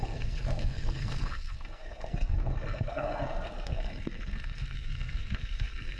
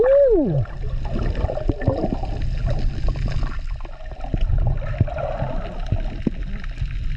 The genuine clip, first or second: second